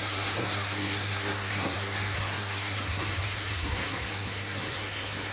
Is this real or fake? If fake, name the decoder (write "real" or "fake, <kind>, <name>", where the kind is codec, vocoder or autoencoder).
fake, codec, SNAC